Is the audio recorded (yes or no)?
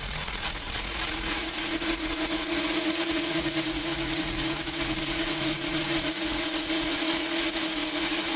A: no